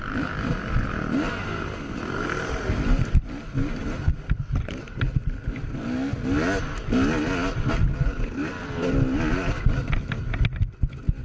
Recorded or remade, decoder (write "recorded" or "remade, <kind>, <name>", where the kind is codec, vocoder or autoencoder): recorded